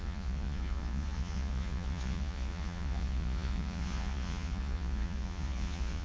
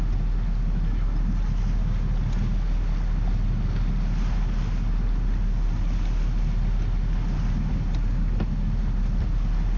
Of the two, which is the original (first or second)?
second